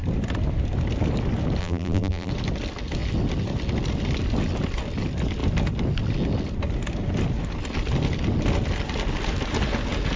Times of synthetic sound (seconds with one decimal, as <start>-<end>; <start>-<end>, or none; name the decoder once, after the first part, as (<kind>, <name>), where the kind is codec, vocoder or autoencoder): 1.6-2.3 (vocoder, BigVGAN v2)